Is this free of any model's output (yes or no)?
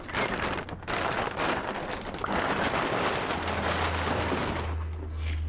yes